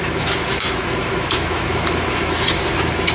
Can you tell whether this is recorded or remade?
remade